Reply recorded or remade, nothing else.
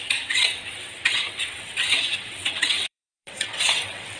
remade